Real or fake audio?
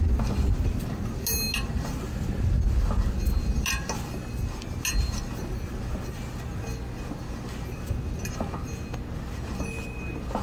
real